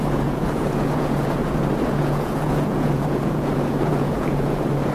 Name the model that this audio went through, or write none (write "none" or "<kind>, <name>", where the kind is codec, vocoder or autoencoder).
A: vocoder, Vocos